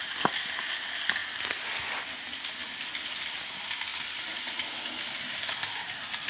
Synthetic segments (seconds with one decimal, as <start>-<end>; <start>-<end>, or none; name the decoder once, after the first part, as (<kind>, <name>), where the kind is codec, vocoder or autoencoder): none